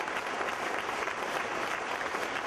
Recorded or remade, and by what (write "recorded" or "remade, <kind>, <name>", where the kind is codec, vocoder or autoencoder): remade, vocoder, BigVGAN v2